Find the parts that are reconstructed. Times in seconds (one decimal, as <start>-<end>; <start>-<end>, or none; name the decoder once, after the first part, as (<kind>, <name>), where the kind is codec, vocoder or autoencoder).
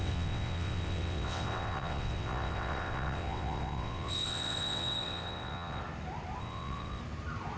0.0-5.8 (vocoder, WaveNeXt); 6.4-7.0